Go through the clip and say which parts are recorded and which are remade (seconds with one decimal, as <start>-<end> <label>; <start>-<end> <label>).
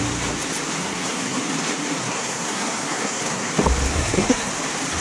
0.0-0.8 recorded; 0.8-1.4 remade; 1.4-2.0 recorded; 2.0-3.5 remade; 3.5-3.9 recorded; 3.9-4.5 remade; 4.5-5.0 recorded